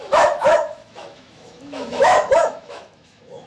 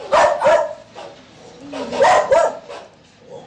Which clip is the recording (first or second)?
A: second